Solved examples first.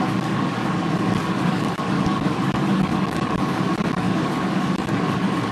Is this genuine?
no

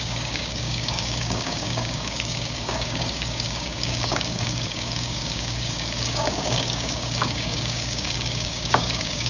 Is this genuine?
no